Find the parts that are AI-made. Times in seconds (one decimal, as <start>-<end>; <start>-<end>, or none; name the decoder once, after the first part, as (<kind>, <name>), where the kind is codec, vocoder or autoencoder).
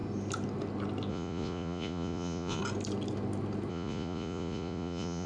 1.1-2.6 (vocoder, Vocos); 3.7-5.3